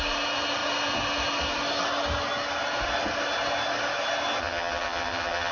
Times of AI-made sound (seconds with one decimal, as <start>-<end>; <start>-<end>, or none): 4.4-5.5